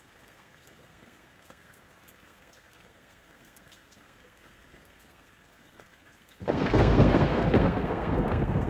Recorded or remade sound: remade